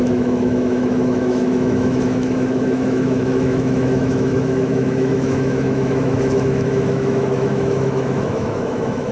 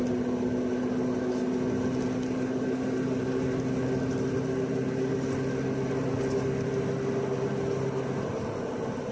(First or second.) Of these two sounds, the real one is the second